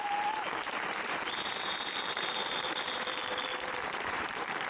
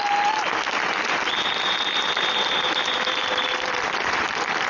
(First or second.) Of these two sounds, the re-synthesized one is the first